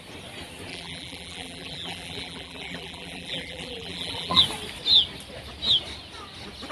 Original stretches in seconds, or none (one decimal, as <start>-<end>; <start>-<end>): 0.0-0.7; 4.4-6.7